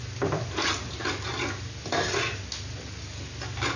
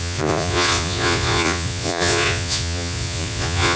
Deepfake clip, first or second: second